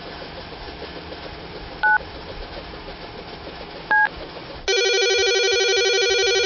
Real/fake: real